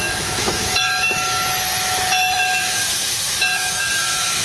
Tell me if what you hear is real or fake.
fake